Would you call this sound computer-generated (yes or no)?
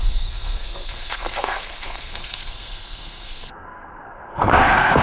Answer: yes